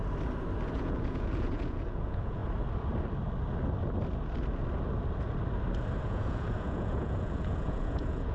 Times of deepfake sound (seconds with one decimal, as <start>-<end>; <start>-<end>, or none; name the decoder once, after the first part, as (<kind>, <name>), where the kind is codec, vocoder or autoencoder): 0.7-2.4 (vocoder, Vocos); 6.0-8.3